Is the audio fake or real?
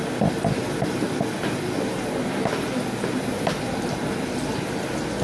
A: real